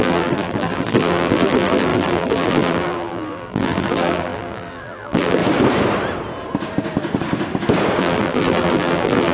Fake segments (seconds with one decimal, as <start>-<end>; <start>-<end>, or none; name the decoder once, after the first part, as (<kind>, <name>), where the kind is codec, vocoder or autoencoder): 0.0-5.4 (vocoder, BigVGAN v2); 8.0-9.3